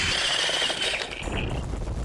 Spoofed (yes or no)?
no